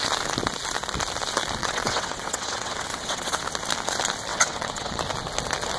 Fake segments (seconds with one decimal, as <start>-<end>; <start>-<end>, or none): 1.6-3.4; 4.3-5.0